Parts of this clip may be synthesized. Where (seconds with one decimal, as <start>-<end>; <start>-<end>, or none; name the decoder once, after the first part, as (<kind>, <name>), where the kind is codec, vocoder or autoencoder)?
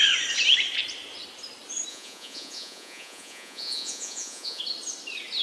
1.9-4.6 (vocoder, Vocos)